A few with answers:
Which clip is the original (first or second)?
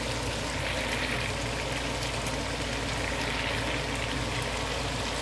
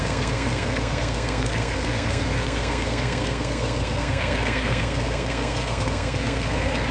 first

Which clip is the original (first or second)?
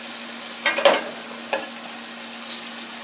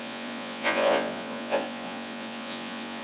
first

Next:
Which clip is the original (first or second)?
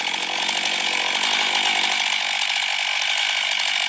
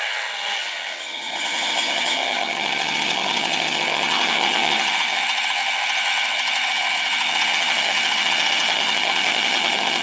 first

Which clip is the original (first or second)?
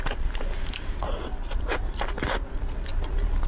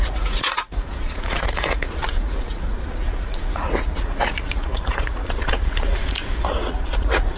first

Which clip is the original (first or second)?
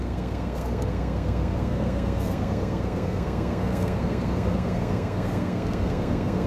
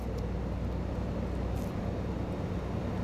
second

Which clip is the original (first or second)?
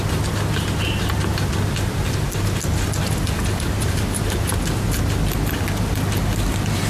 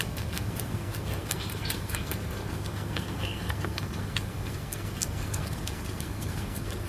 first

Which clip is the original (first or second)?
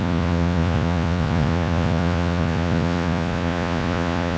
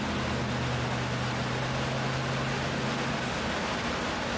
second